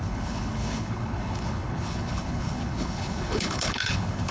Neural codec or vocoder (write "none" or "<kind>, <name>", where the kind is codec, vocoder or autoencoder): codec, HILCodec